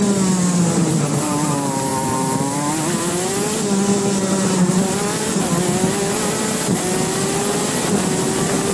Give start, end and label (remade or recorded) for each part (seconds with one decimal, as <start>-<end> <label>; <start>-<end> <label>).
0.0-8.7 recorded